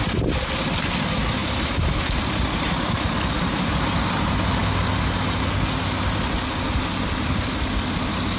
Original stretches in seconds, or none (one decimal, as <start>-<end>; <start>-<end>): 0.0-1.4; 3.7-8.4